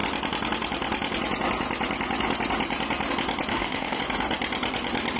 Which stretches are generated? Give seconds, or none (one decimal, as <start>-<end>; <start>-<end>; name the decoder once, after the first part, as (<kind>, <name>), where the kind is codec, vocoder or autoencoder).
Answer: 3.5-4.0 (autoencoder, DAC-VAE)